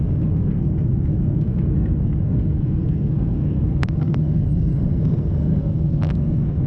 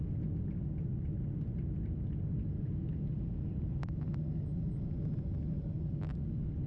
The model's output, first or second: first